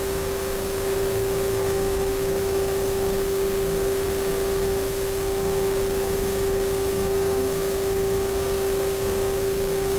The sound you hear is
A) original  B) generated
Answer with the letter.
B